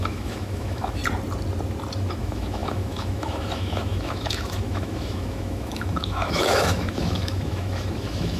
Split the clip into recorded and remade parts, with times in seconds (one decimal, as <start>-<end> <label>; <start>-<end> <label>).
0.0-1.0 remade; 1.0-2.2 recorded; 2.2-8.4 remade